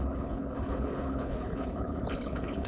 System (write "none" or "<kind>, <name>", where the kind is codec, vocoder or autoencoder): codec, HILCodec